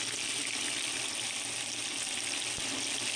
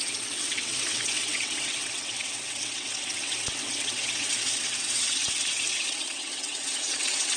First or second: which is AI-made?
second